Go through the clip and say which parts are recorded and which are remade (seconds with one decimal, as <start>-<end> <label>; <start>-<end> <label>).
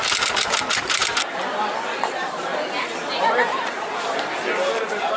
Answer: 0.0-2.5 remade; 2.5-3.2 recorded; 3.2-5.2 remade